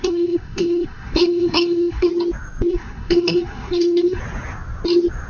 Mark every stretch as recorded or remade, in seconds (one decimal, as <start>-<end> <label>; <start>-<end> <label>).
0.0-2.1 remade; 2.1-2.7 recorded; 2.7-4.2 remade; 4.2-5.3 recorded